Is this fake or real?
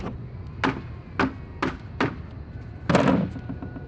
real